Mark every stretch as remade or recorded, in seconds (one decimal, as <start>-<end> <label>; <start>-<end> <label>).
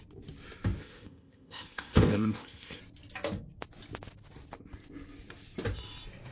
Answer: 0.0-0.8 recorded; 0.8-2.8 remade; 2.8-6.3 recorded